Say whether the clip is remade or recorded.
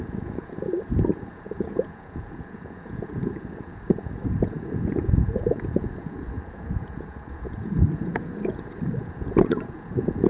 remade